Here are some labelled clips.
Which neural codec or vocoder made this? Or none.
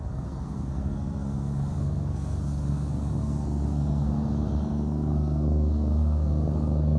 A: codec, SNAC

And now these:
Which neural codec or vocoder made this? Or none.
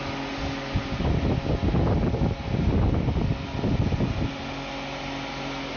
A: none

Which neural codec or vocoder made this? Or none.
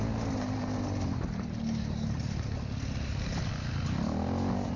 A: none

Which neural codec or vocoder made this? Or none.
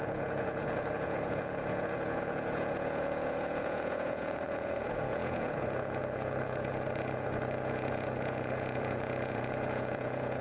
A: vocoder, Vocos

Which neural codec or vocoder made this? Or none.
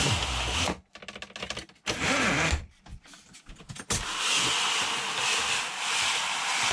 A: none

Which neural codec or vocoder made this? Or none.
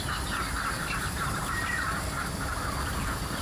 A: vocoder, BigVGAN v2